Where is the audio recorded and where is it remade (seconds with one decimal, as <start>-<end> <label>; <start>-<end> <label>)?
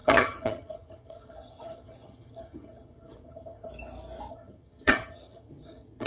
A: 0.0-3.7 remade; 3.7-4.3 recorded; 4.3-6.1 remade